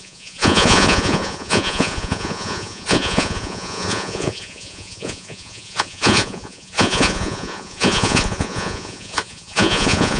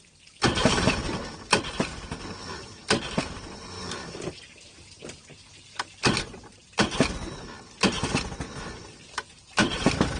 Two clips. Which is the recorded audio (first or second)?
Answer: second